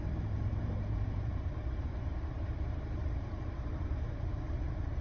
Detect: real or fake fake